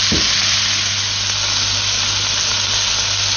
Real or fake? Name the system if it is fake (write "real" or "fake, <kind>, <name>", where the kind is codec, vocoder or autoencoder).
real